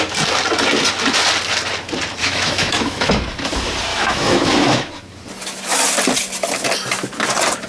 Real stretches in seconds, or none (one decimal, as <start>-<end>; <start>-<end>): 0.0-2.2; 3.1-3.9; 4.9-7.7